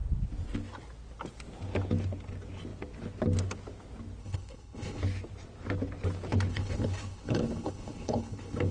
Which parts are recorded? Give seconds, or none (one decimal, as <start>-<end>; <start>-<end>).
0.0-4.2; 5.0-6.5